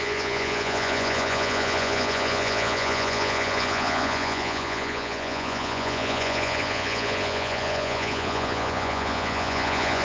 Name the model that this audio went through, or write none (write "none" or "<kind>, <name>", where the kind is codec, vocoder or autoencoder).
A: vocoder, Vocos